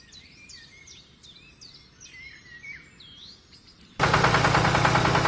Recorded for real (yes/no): yes